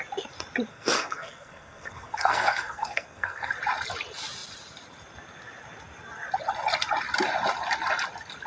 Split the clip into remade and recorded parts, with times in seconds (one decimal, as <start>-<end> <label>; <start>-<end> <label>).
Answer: 0.0-0.7 recorded; 0.7-3.5 remade; 3.5-8.5 recorded